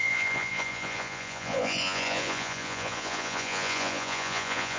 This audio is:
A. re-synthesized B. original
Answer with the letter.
A